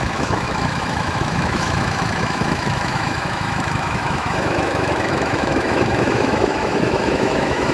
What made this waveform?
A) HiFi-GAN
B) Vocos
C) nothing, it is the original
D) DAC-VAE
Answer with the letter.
D